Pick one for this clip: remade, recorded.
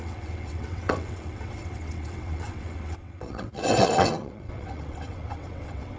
remade